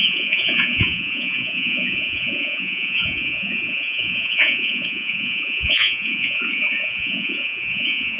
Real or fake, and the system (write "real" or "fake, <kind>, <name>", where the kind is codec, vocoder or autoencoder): fake, vocoder, Vocos